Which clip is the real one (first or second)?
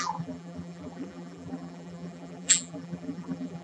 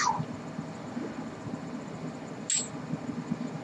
second